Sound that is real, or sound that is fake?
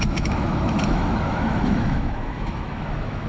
fake